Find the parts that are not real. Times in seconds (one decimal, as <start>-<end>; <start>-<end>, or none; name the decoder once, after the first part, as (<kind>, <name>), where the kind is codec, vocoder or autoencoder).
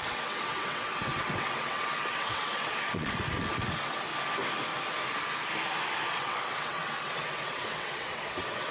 0.0-4.1 (vocoder, WaveNeXt); 6.1-8.7